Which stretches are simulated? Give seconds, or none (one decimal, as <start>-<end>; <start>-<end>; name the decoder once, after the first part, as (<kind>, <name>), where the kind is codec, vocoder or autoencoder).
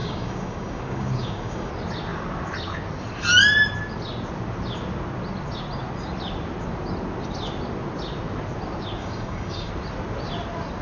0.0-1.7 (codec, DAC); 9.0-9.7